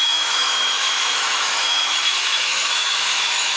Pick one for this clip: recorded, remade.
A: remade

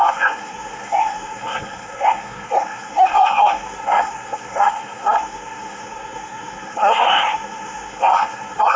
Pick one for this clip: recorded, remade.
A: remade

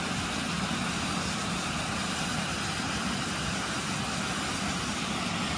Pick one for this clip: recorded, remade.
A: recorded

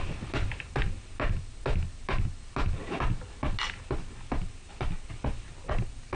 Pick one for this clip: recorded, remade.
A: recorded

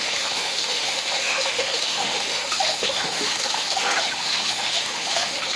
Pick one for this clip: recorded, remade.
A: remade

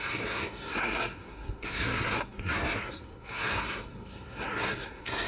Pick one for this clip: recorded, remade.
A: remade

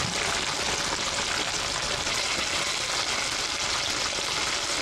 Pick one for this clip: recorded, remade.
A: recorded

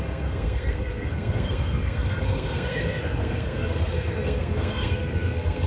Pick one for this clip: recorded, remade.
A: remade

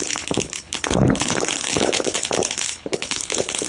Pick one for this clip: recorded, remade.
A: remade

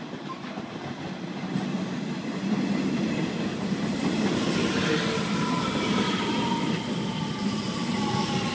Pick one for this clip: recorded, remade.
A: recorded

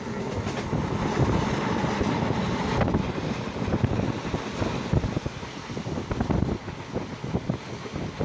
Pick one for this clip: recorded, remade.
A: recorded